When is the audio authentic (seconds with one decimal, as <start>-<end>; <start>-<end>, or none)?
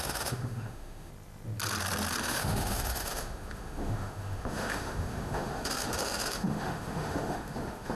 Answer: 1.1-2.2